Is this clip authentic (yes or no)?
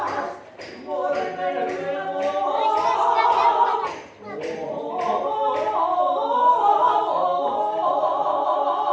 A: yes